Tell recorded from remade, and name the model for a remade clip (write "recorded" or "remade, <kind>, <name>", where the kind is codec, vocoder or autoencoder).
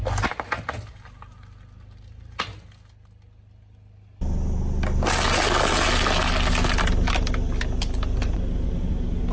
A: recorded